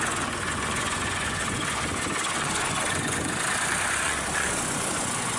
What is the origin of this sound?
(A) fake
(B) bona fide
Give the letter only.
A